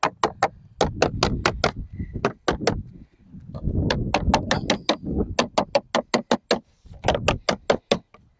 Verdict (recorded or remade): recorded